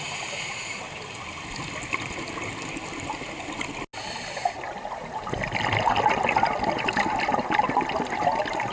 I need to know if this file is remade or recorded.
recorded